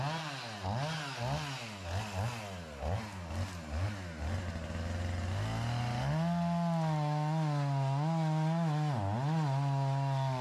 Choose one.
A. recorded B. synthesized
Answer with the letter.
A